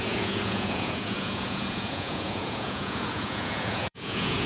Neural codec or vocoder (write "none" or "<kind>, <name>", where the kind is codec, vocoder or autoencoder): vocoder, Vocos